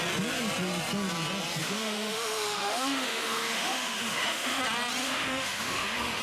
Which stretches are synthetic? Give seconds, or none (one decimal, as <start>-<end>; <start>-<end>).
1.6-4.6; 5.0-6.2